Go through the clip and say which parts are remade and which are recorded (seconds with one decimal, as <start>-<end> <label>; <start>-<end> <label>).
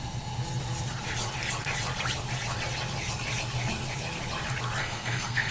0.0-4.8 recorded; 4.8-5.5 remade